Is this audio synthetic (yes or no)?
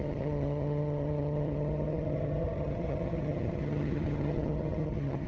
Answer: yes